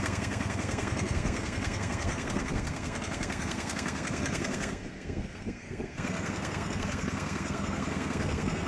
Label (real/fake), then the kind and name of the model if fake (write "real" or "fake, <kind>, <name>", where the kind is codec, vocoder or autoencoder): fake, codec, SNAC